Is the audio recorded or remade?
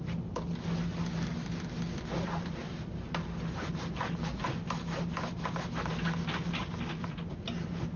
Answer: recorded